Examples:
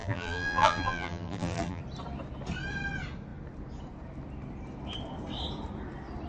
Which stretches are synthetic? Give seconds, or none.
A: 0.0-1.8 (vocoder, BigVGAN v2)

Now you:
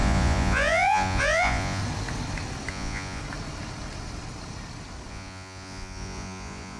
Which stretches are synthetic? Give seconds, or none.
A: 0.0-1.8 (vocoder, Vocos); 2.7-3.2; 5.1-6.8

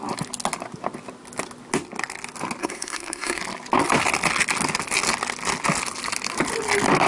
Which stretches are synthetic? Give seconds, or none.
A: 2.6-3.4 (codec, SNAC)

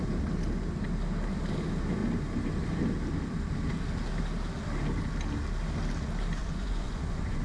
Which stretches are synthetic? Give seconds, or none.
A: 6.4-7.4 (vocoder, Vocos)

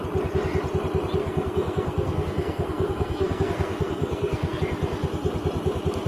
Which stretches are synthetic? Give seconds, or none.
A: 1.2-4.6 (codec, SNAC)

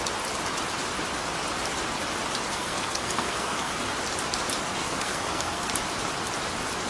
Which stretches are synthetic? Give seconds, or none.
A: 2.5-3.7 (codec, SNAC); 4.8-5.7

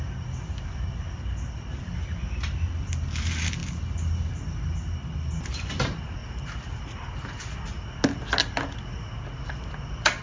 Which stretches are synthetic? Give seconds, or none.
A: none

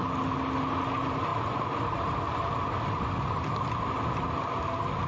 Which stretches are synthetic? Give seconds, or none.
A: none